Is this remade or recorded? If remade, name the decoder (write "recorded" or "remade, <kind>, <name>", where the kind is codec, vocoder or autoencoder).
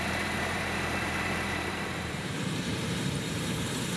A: remade, vocoder, BigVGAN v2